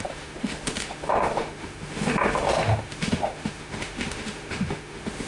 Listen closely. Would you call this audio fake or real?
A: fake